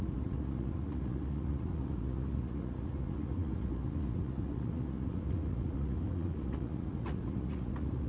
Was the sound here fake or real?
fake